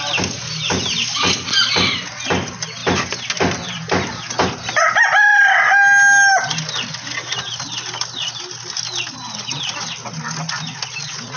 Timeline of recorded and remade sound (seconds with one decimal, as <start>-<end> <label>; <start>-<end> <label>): 0.0-11.4 recorded